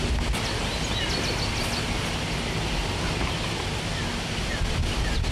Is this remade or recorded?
recorded